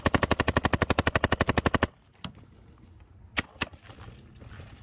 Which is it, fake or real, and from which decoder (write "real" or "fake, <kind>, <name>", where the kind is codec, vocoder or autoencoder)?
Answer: real